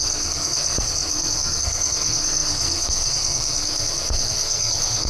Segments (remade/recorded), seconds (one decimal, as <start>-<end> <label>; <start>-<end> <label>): 0.0-5.1 remade